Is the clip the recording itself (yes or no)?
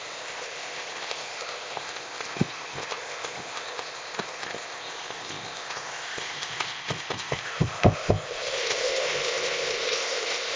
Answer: no